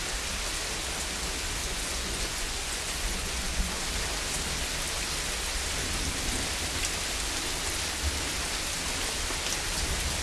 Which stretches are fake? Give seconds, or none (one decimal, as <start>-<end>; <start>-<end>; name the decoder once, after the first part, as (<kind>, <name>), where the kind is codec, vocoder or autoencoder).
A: 1.6-3.8 (vocoder, Vocos)